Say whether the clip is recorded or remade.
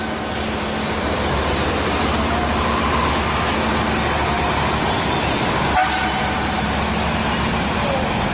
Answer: recorded